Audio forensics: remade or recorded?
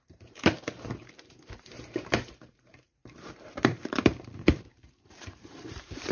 remade